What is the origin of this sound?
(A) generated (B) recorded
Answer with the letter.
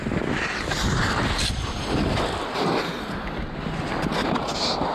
B